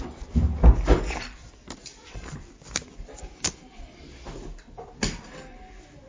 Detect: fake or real real